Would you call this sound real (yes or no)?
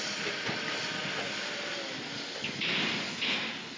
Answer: yes